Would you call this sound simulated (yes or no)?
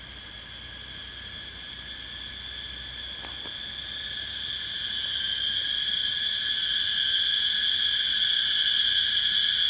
no